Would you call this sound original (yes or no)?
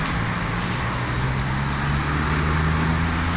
yes